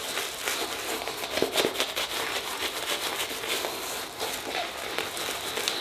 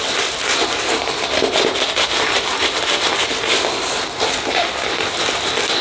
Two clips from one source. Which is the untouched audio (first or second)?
first